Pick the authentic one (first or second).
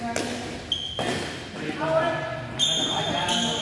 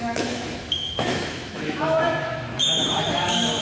first